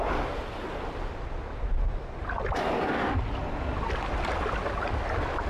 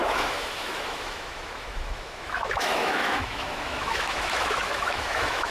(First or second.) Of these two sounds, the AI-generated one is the second